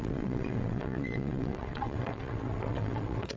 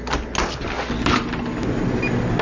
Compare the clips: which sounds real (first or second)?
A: second